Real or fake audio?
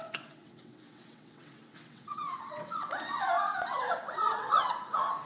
fake